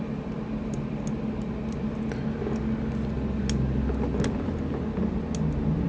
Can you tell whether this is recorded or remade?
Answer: recorded